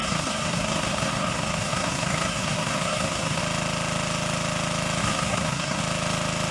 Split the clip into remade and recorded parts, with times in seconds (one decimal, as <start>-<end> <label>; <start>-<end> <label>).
0.0-3.4 remade; 3.4-5.0 recorded; 5.0-5.8 remade; 5.8-6.5 recorded